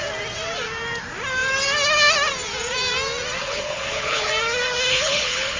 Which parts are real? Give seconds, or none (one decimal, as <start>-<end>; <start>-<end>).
0.0-3.4; 4.3-4.9